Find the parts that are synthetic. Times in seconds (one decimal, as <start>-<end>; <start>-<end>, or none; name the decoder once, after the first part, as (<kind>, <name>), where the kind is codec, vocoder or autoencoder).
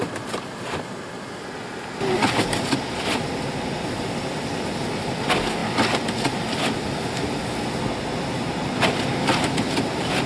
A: none